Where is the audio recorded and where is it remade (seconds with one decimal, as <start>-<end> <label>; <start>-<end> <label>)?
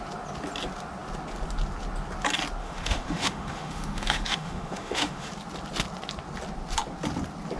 0.0-2.6 recorded; 2.6-5.3 remade; 5.3-7.6 recorded